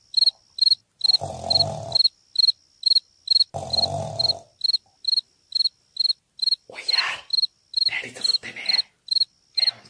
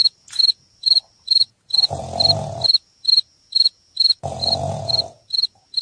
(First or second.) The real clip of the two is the first